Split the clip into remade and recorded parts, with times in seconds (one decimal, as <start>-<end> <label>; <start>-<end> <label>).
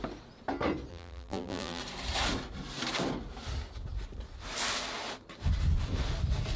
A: 0.0-0.9 recorded; 0.9-1.8 remade; 1.8-6.6 recorded